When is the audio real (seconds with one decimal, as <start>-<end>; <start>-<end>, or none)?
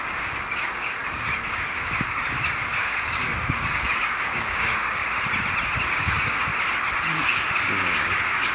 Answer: 5.0-5.9; 6.5-7.1